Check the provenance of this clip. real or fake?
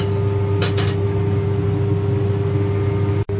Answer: real